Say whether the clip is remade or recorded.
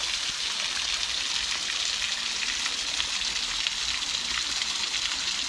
recorded